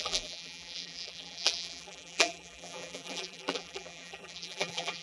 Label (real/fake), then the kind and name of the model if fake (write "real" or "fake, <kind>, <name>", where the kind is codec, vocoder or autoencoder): fake, vocoder, BigVGAN v2